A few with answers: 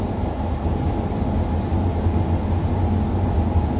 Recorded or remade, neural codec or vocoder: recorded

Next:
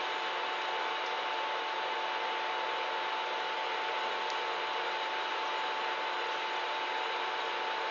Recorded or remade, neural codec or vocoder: recorded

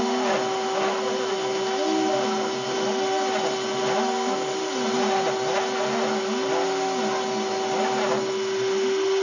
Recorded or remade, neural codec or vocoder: recorded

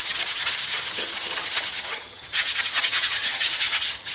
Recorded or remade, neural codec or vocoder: remade, vocoder, HiFi-GAN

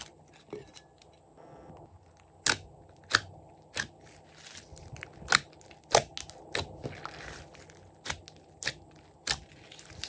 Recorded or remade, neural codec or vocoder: recorded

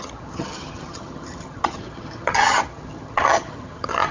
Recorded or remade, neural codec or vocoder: remade, vocoder, HiFi-GAN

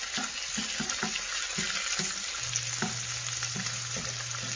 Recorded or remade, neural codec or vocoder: recorded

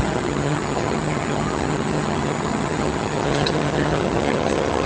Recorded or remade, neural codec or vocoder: remade, vocoder, HiFi-GAN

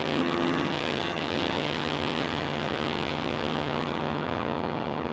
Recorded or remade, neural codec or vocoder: remade, vocoder, HiFi-GAN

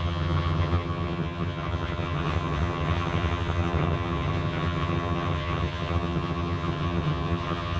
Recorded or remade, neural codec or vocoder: remade, vocoder, HiFi-GAN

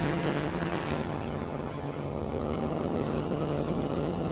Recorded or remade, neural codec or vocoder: remade, vocoder, HiFi-GAN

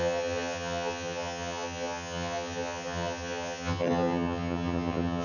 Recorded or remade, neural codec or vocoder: remade, vocoder, HiFi-GAN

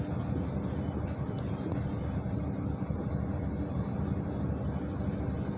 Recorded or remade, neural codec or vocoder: recorded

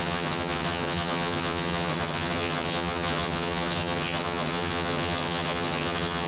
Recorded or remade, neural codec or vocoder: remade, vocoder, HiFi-GAN